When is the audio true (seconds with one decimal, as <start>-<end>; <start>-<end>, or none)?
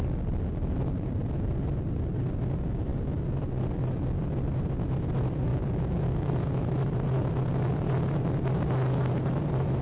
0.0-5.5; 6.3-9.8